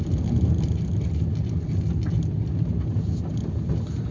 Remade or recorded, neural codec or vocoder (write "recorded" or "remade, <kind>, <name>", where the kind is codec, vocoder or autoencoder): recorded